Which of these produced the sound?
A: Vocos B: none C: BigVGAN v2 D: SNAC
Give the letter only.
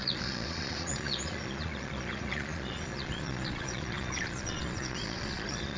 A